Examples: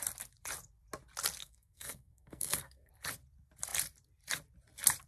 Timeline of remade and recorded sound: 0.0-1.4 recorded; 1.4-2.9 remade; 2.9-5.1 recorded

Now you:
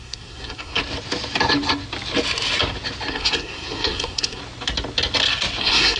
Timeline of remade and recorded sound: 0.0-0.8 remade; 0.8-3.1 recorded; 3.1-4.4 remade; 4.4-5.6 recorded; 5.6-6.0 remade

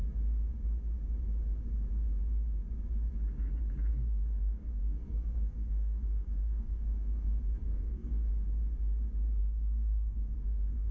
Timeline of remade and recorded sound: 0.0-3.9 recorded; 3.9-8.3 remade; 8.3-9.4 recorded; 9.4-10.9 remade